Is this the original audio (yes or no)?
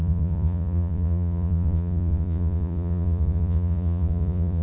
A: no